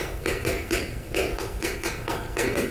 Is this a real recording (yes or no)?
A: no